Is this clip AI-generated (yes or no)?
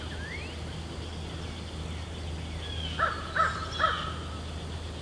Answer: no